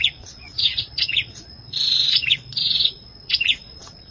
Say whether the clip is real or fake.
fake